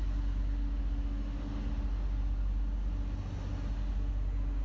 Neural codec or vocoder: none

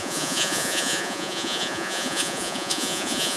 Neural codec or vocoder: vocoder, Vocos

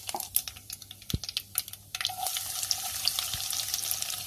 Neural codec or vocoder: none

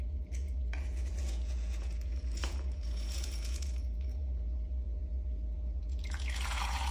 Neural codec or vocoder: vocoder, Vocos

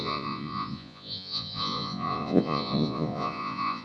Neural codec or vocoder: vocoder, Vocos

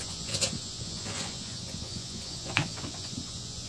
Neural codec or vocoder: vocoder, Vocos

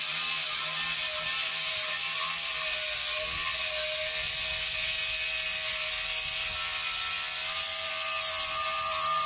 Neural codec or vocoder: none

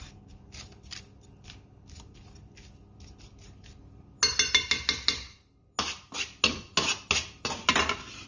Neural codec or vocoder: none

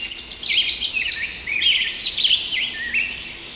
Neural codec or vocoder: none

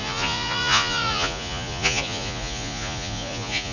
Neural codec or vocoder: vocoder, Vocos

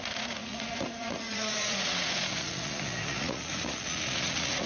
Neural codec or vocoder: vocoder, Vocos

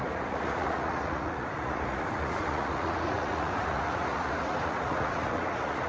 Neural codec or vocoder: vocoder, Vocos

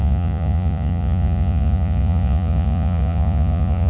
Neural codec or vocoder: vocoder, Vocos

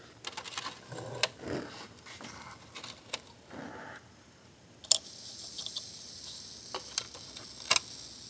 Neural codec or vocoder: none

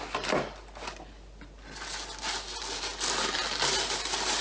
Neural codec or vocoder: none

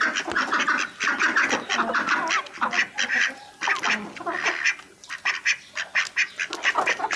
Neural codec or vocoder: none